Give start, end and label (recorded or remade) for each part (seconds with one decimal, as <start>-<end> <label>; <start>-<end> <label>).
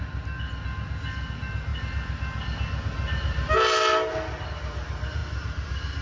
0.0-6.0 recorded